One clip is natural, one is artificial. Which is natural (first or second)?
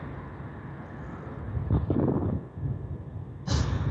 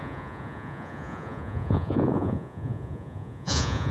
first